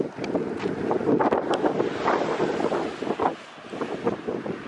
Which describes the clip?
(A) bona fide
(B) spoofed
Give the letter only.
A